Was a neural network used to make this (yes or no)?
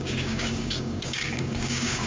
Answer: yes